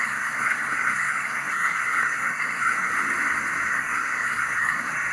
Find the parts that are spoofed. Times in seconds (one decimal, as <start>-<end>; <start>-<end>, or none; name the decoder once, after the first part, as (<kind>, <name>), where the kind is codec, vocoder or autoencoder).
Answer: 0.0-2.9 (codec, SNAC); 3.7-5.1